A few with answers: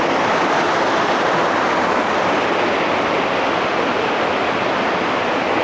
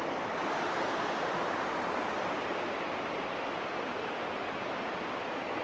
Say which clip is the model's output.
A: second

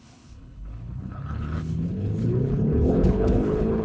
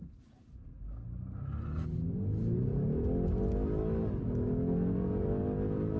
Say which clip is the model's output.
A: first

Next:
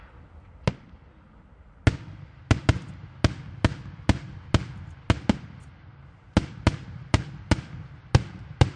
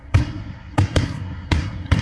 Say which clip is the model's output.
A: second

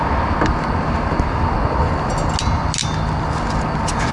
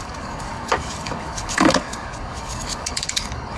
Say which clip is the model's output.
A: second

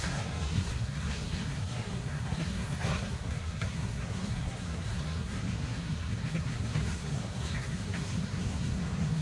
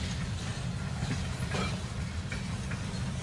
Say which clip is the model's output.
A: first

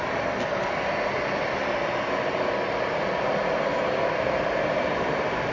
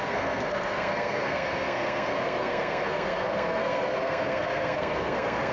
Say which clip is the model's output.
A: second